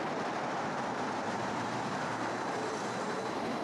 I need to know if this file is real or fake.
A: fake